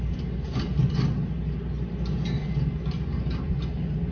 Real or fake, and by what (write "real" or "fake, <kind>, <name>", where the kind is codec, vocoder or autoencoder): real